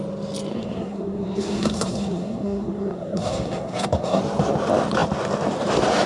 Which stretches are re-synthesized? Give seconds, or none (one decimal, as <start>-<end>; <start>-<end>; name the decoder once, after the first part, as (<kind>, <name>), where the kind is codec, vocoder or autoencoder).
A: 0.5-4.2 (codec, SNAC)

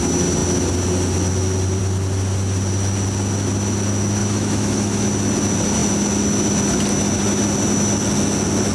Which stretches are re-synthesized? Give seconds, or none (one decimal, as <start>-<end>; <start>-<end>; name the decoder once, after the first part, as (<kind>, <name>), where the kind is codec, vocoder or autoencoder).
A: 4.2-5.1 (autoencoder, DAC-VAE)

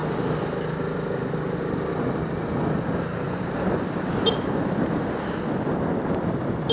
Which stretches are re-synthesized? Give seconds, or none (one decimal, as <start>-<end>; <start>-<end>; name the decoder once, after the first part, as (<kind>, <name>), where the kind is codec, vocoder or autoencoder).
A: none

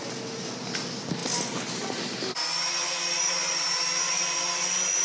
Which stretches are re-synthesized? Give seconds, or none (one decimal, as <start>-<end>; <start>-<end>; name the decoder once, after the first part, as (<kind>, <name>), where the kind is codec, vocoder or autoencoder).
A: none

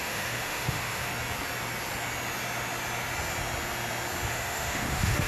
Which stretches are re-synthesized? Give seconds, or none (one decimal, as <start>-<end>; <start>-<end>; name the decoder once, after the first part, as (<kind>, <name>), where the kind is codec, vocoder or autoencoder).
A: 0.0-1.1 (autoencoder, DAC-VAE); 4.3-5.3

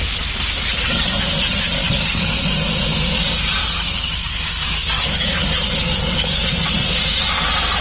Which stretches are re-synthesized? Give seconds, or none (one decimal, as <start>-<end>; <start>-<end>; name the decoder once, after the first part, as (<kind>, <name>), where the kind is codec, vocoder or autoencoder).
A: 1.8-2.4 (codec, DAC); 3.6-6.5